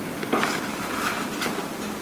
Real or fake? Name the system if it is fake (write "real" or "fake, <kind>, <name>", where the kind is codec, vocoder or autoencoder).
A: real